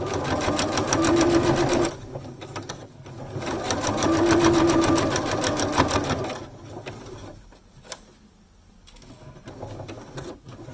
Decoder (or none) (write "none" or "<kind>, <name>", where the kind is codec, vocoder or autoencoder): none